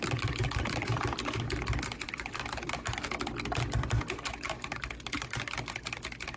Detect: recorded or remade recorded